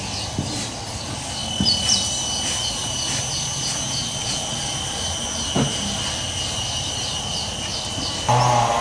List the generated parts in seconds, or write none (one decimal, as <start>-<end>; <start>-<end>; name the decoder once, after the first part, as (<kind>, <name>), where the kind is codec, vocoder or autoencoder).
none